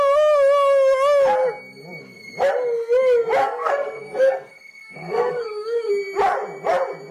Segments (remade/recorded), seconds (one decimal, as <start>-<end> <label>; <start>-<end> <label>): 0.0-3.4 recorded; 3.4-5.9 remade; 5.9-7.1 recorded

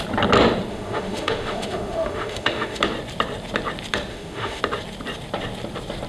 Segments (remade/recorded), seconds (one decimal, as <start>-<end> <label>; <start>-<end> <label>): 0.0-0.7 recorded; 0.7-2.8 remade; 2.8-4.1 recorded; 4.1-4.6 remade; 4.6-6.1 recorded

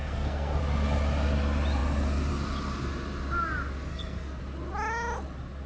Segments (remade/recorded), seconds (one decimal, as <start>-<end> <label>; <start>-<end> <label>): 0.0-0.6 remade; 0.6-3.9 recorded; 3.9-4.4 remade; 4.4-5.7 recorded

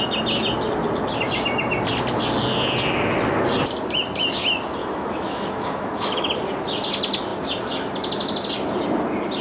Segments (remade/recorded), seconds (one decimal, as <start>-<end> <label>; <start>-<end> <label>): 0.0-4.8 recorded; 4.8-6.3 remade; 6.3-9.4 recorded

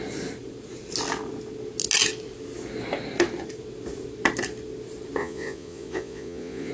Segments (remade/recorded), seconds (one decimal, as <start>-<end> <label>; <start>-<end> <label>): 0.0-5.2 recorded; 5.2-6.7 remade